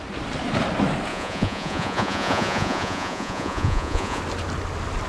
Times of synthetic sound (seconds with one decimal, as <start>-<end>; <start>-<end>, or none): 1.1-4.2